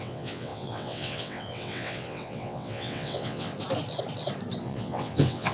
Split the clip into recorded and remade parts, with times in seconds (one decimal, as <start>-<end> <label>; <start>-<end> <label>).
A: 0.0-3.5 remade; 3.5-4.6 recorded; 4.6-5.5 remade